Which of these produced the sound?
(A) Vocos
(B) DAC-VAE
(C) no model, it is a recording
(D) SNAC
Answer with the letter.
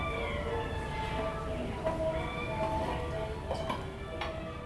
C